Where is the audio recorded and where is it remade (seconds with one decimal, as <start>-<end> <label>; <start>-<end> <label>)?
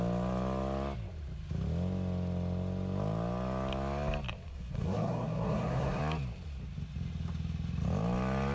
0.0-4.5 recorded; 4.5-6.0 remade; 6.0-8.5 recorded